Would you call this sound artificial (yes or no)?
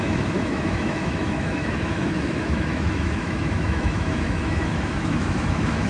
yes